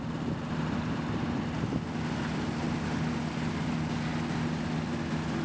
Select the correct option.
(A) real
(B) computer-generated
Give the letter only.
A